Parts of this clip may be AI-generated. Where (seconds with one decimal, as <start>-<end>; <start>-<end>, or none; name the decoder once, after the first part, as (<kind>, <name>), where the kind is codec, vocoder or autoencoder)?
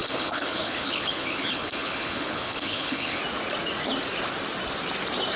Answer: 0.0-3.2 (codec, HILCodec)